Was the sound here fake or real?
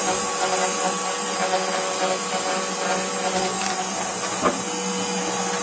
real